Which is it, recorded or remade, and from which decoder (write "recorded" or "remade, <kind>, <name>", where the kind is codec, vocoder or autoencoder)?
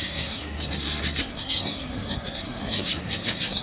remade, codec, SNAC